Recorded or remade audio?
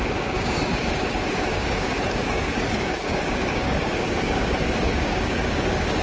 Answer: remade